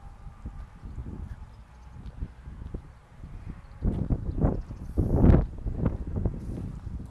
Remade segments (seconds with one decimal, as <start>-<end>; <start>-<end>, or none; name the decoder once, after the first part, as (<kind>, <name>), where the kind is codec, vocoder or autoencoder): 3.0-4.8 (vocoder, BigVGAN v2)